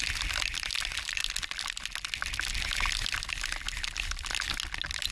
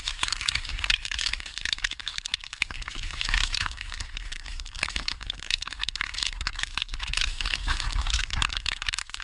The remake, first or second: second